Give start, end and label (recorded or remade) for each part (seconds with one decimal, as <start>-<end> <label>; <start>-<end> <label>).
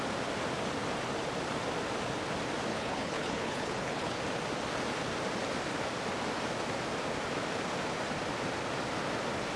0.0-2.7 recorded; 2.7-4.2 remade; 4.2-9.6 recorded